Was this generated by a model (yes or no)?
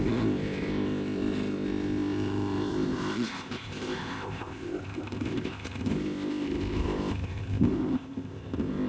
yes